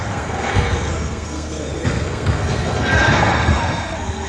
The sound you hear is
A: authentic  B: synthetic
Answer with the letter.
B